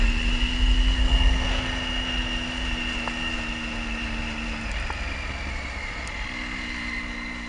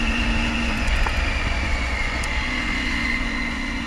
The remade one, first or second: second